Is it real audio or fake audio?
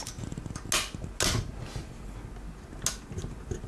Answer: real